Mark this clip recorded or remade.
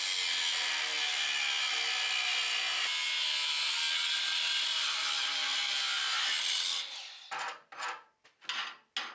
recorded